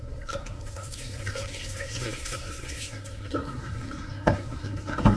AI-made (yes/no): yes